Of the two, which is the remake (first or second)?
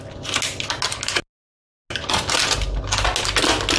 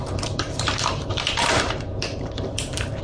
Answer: second